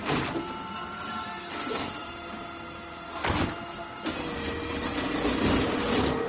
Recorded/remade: recorded